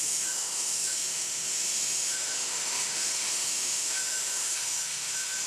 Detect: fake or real fake